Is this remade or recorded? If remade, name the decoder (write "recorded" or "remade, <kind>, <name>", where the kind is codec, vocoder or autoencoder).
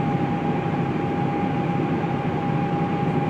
recorded